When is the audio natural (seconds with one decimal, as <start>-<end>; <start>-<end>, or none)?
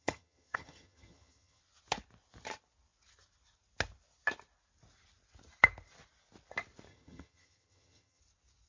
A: 1.6-6.9; 8.2-8.7